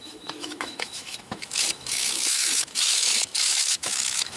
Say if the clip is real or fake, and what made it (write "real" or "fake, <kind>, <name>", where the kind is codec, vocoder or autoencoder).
fake, autoencoder, DAC-VAE